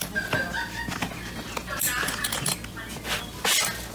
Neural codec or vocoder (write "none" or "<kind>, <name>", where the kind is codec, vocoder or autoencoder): none